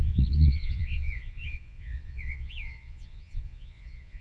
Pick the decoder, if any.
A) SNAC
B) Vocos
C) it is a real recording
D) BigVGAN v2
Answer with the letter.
B